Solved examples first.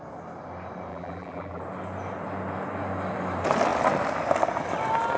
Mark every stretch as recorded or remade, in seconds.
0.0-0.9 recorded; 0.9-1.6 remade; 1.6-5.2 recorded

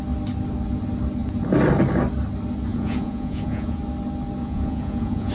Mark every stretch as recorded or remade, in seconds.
0.0-2.7 recorded; 2.7-3.8 remade; 3.8-4.4 recorded; 4.4-5.3 remade

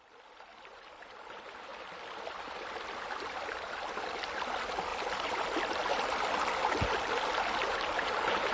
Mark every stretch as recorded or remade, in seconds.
0.0-0.5 recorded; 0.5-1.1 remade; 1.1-1.7 recorded; 1.7-3.9 remade; 3.9-4.9 recorded; 4.9-6.5 remade; 6.5-8.5 recorded

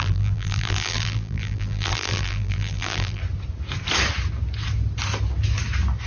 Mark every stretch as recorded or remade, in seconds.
0.0-3.2 remade; 3.2-6.1 recorded